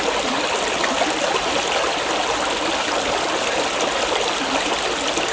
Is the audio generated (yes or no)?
no